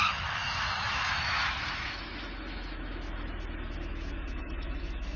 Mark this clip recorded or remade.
remade